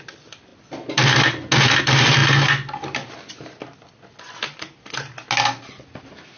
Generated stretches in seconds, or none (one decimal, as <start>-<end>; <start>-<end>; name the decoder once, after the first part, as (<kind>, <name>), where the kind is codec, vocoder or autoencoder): 0.0-0.5 (vocoder, BigVGAN v2); 1.8-2.2; 6.0-6.4

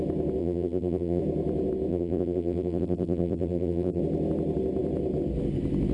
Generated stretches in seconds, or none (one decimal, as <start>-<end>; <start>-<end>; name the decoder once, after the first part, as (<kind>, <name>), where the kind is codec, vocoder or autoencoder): 0.4-1.2 (vocoder, BigVGAN v2); 1.9-4.0

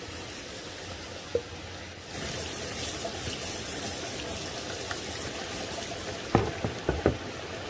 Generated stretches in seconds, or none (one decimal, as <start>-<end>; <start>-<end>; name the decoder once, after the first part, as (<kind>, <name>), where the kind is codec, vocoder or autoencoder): none

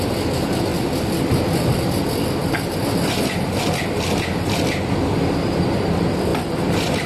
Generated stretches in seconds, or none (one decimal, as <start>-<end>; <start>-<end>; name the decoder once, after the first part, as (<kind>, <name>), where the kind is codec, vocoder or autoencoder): 0.7-2.0 (vocoder, BigVGAN v2); 2.4-3.6; 6.3-7.1

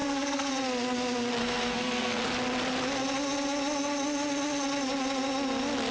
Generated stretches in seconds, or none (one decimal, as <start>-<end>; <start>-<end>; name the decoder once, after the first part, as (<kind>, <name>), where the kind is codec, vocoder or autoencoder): 0.0-0.5 (codec, SNAC); 1.4-2.2